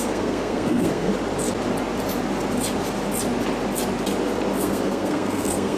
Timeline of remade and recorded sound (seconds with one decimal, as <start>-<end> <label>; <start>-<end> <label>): 0.0-1.1 remade; 1.1-4.6 recorded; 4.6-5.8 remade